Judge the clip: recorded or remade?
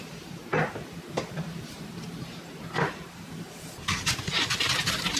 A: remade